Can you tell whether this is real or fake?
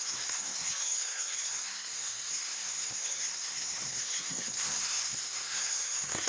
fake